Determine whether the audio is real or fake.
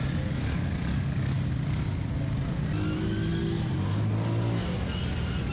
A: real